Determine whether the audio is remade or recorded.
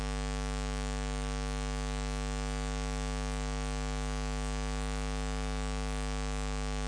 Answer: remade